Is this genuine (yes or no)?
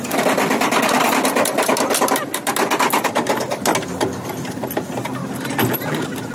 yes